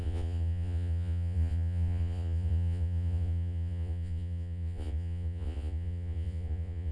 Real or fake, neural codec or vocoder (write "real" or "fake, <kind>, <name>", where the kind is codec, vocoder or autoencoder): fake, vocoder, Vocos